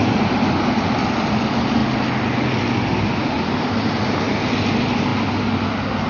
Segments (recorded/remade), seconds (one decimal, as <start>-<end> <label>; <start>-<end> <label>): 0.0-6.1 recorded